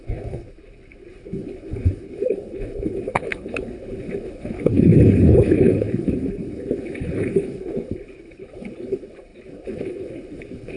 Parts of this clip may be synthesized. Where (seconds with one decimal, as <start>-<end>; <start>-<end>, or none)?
0.0-10.8